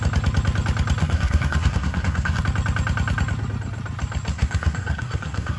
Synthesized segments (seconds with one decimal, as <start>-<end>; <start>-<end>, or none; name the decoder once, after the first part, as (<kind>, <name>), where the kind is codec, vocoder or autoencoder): 1.0-2.4 (codec, SNAC); 4.3-5.6